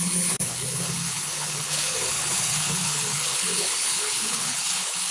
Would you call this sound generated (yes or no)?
yes